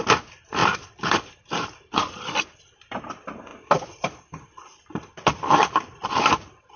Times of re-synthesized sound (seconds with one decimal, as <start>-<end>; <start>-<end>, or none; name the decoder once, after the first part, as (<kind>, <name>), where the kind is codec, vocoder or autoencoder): 0.6-2.6 (vocoder, BigVGAN v2); 3.5-6.8